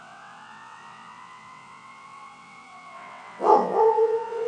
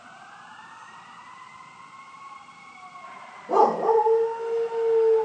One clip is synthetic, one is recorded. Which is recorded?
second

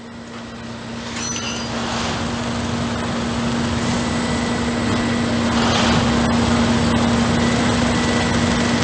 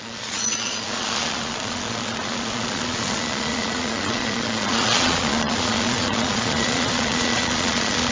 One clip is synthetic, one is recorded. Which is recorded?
first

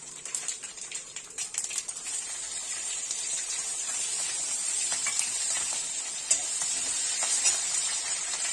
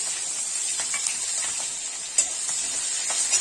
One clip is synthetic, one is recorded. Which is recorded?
second